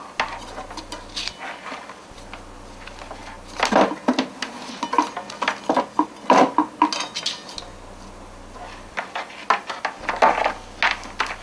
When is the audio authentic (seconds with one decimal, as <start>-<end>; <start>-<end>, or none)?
0.0-11.4